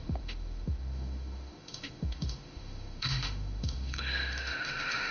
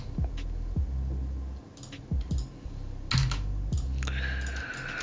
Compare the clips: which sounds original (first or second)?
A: second